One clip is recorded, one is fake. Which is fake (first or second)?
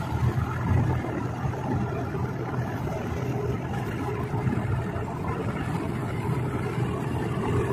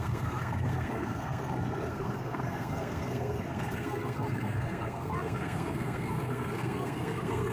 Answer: second